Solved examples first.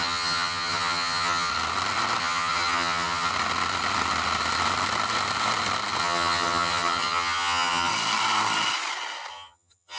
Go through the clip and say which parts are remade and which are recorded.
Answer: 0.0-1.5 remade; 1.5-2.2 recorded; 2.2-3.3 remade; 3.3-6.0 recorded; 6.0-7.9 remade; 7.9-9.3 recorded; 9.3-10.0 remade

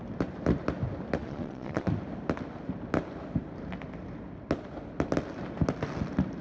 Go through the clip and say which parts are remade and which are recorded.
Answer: 0.0-1.2 recorded; 1.2-1.9 remade; 1.9-6.4 recorded

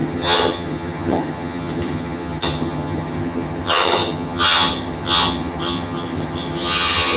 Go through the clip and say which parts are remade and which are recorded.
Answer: 0.0-7.2 remade

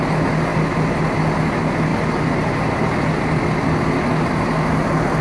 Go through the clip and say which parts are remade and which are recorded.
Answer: 0.0-5.2 recorded

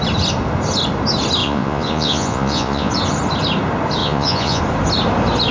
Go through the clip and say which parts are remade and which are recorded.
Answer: 0.0-1.4 recorded; 1.4-2.9 remade; 2.9-4.0 recorded; 4.0-4.6 remade; 4.6-5.5 recorded

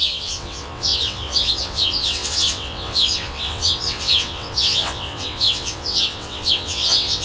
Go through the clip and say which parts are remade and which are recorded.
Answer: 0.0-7.2 remade

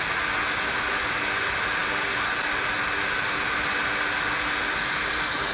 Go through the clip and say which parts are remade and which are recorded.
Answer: 0.0-5.5 recorded

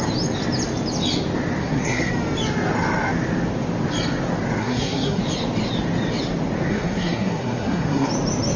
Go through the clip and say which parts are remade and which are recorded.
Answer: 0.0-1.6 recorded; 1.6-2.1 remade; 2.1-4.6 recorded; 4.6-5.2 remade; 5.2-6.7 recorded; 6.7-8.1 remade; 8.1-8.6 recorded